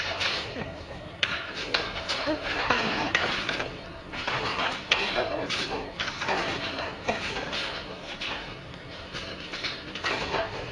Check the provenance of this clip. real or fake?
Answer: fake